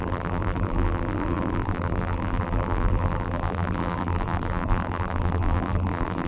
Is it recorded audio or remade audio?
remade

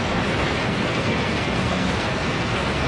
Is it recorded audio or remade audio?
remade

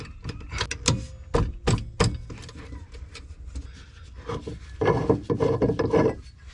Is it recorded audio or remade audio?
recorded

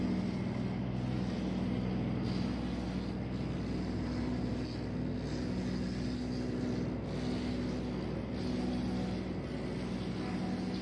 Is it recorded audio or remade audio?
recorded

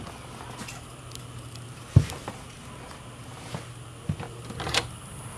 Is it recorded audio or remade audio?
recorded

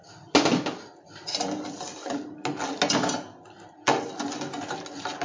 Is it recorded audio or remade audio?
recorded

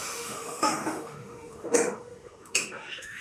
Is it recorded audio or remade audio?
remade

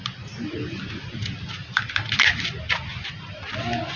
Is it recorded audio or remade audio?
remade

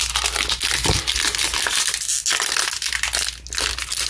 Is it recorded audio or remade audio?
recorded